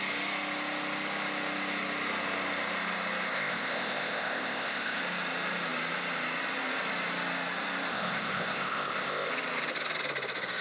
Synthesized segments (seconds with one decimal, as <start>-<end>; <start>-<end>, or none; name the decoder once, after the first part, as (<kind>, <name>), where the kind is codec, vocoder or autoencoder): 3.3-5.0 (codec, ZipCodec); 7.9-9.3